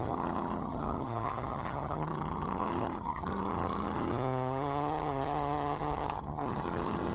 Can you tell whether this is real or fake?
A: fake